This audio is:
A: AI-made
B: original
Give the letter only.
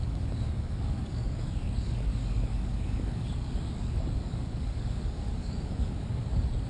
A